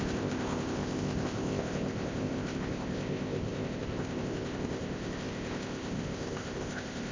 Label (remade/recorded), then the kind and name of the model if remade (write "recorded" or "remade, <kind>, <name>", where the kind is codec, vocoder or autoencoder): remade, codec, ZipCodec